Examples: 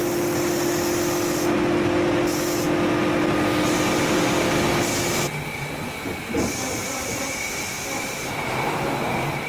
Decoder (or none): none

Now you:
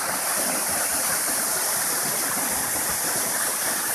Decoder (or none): vocoder, BigVGAN v2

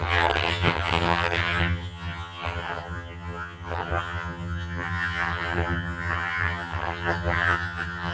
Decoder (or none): vocoder, HiFi-GAN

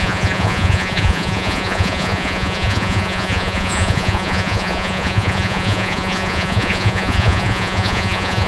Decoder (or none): vocoder, Vocos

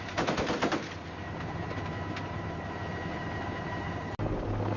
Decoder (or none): none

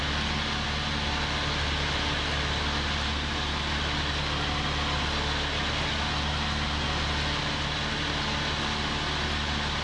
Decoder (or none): none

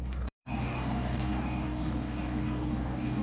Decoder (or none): codec, DAC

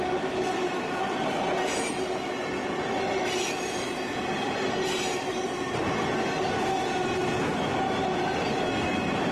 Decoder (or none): none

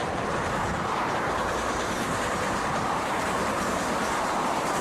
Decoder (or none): vocoder, BigVGAN v2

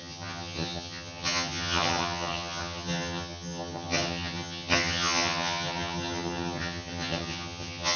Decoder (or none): vocoder, HiFi-GAN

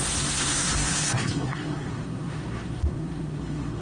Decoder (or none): codec, SNAC